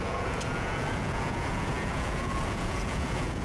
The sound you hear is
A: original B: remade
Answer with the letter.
B